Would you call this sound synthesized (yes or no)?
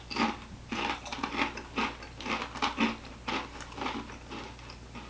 no